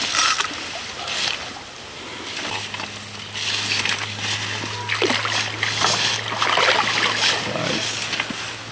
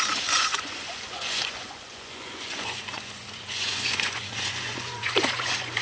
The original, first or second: first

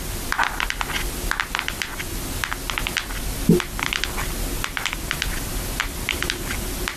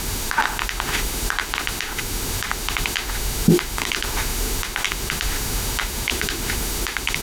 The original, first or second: first